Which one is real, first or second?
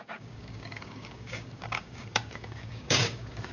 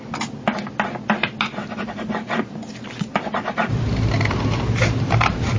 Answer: second